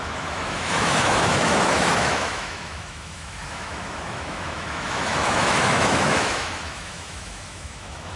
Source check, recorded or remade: remade